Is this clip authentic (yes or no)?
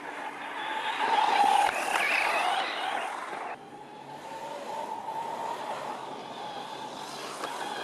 yes